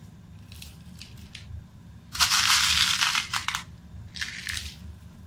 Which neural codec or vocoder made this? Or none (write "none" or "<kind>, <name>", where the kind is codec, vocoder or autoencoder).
vocoder, BigVGAN v2